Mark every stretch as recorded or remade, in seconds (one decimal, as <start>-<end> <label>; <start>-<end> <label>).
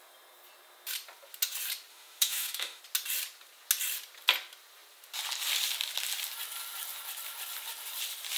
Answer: 0.0-1.9 recorded; 1.9-2.8 remade; 2.8-8.4 recorded